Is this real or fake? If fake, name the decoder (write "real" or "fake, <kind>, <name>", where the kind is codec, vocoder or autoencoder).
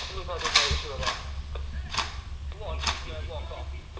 real